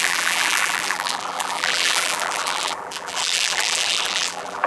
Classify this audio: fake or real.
fake